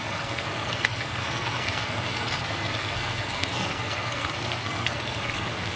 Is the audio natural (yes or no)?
no